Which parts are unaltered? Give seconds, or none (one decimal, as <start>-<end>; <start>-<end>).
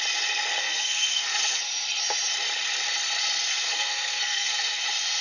0.0-0.6; 1.6-3.5; 4.8-5.2